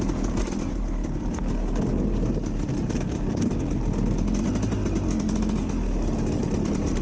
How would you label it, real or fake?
real